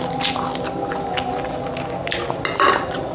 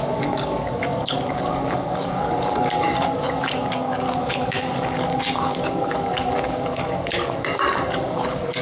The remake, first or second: second